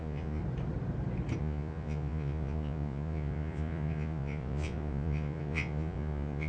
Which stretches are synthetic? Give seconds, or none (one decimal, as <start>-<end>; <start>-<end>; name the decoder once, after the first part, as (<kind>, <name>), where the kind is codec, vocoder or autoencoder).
0.0-0.4 (vocoder, Vocos); 1.4-6.5